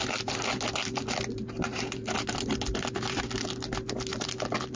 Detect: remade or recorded recorded